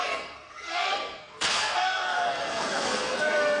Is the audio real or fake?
fake